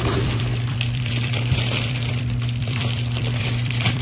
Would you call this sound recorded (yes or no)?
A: no